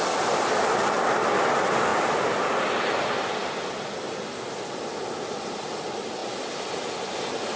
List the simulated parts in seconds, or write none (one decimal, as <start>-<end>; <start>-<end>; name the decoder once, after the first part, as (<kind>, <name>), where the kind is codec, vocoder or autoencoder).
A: 1.9-2.4 (vocoder, BigVGAN v2); 6.2-6.9